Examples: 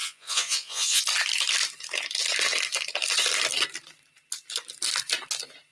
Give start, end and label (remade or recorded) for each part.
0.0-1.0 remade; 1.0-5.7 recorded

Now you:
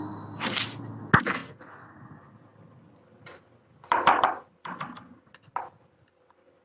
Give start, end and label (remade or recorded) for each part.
0.0-2.5 recorded; 2.5-6.6 remade

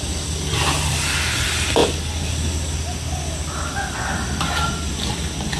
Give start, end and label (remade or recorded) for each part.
0.0-5.6 recorded

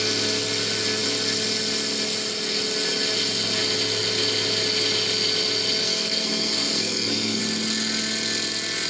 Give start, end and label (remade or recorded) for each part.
0.0-5.8 recorded; 5.8-7.4 remade; 7.4-8.9 recorded

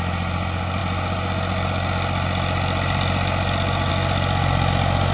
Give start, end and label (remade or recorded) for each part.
0.0-5.1 recorded